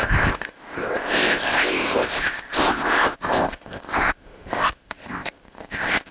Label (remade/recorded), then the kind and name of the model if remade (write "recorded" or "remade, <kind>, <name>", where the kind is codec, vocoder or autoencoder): remade, codec, ZipCodec